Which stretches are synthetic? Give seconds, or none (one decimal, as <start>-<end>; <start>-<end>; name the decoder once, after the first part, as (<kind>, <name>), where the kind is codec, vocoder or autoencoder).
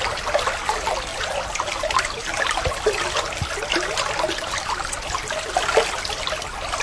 none